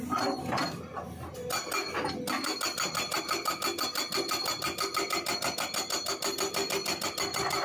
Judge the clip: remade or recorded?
recorded